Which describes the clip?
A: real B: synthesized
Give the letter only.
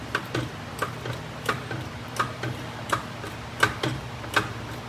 B